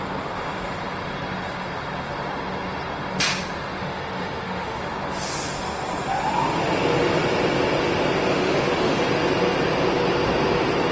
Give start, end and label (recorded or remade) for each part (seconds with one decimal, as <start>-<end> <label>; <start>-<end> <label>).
0.0-3.8 recorded; 3.8-4.8 remade; 4.8-8.3 recorded; 8.3-9.0 remade; 9.0-10.9 recorded